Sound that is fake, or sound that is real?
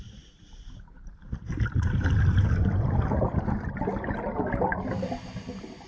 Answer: real